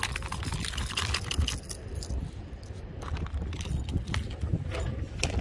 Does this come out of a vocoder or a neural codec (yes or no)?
no